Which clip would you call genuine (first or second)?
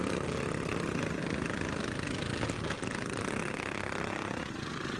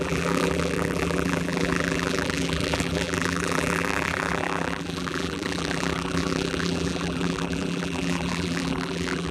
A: first